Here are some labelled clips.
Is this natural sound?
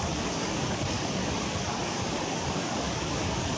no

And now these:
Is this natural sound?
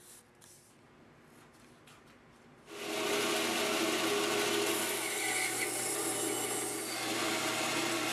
yes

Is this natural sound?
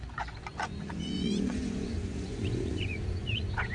no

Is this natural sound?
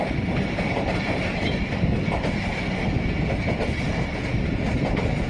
yes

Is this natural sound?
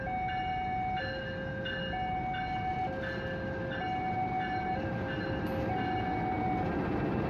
yes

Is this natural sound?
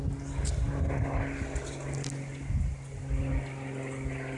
yes